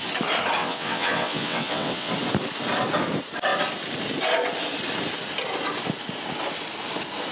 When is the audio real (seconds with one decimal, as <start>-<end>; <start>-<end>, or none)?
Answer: 0.0-0.6; 2.1-7.3